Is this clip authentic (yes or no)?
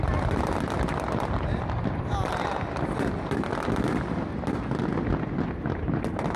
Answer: yes